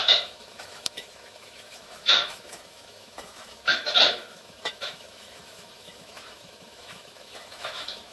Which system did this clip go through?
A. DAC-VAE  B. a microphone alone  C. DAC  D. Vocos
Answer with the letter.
A